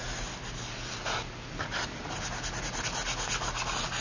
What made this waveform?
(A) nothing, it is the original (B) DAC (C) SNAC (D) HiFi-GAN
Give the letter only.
A